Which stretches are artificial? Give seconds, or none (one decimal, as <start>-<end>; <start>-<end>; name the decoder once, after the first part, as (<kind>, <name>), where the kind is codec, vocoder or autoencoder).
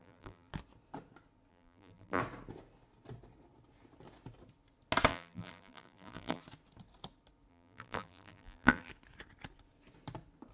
0.0-0.5 (vocoder, BigVGAN v2); 1.5-2.2; 5.1-6.4; 7.5-8.9